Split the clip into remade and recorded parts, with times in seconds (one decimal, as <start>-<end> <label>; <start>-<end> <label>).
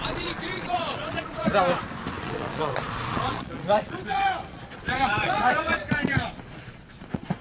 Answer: 0.0-1.5 remade; 1.5-2.2 recorded; 2.2-7.4 remade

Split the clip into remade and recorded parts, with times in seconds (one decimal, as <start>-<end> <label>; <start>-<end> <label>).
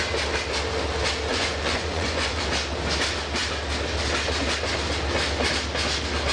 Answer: 0.0-1.3 recorded; 1.3-2.4 remade; 2.4-6.3 recorded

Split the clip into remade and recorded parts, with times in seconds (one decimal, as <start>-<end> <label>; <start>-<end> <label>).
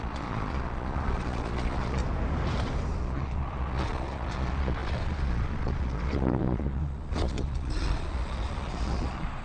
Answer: 0.0-2.0 remade; 2.0-3.0 recorded; 3.0-9.4 remade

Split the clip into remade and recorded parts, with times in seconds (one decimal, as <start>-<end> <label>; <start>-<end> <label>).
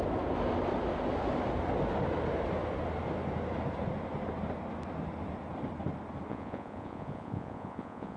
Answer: 0.0-6.3 recorded; 6.3-8.2 remade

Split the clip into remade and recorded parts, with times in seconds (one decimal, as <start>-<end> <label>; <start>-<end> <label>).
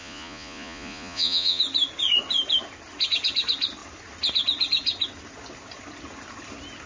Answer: 0.0-1.6 remade; 1.6-6.9 recorded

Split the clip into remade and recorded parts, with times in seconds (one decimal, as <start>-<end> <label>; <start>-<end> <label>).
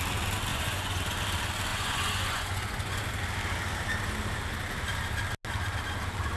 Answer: 0.0-0.5 recorded; 0.5-1.0 remade; 1.0-1.7 recorded; 1.7-3.0 remade; 3.0-6.4 recorded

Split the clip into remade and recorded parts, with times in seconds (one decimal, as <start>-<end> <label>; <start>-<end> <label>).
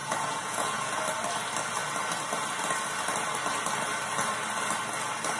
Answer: 0.0-1.0 remade; 1.0-5.4 recorded